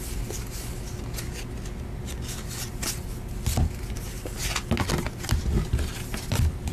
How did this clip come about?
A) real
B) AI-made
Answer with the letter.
A